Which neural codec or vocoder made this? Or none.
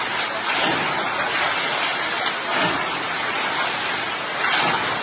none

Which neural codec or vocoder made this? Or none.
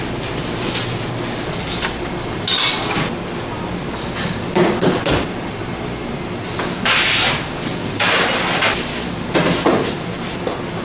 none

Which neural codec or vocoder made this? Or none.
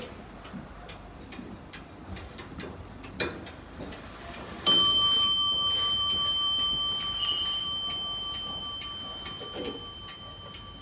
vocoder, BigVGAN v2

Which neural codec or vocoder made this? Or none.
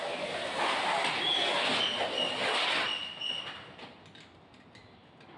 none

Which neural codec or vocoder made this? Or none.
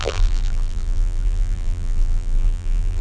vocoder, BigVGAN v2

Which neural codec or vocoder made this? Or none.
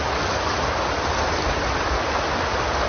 none